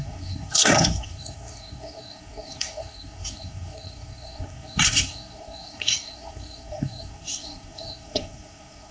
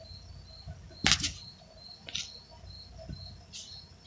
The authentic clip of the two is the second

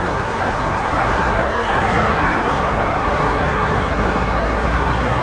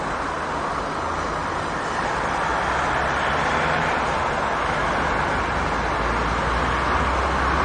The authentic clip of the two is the second